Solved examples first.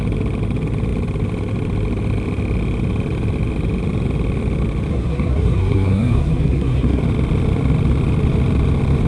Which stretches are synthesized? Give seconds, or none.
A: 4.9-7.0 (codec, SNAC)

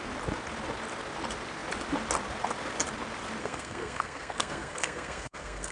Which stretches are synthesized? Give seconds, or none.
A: 3.4-5.7 (codec, SNAC)

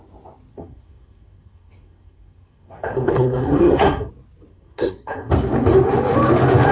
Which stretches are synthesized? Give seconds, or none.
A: 0.5-4.1 (codec, SNAC); 4.5-5.3

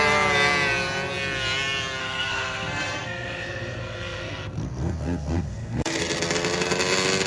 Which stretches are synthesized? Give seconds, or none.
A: 2.0-6.0 (codec, SNAC)